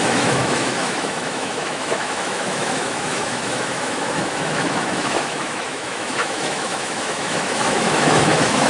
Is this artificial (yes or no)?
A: yes